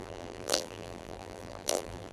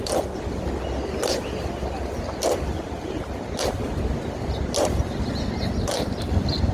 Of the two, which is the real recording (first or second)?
second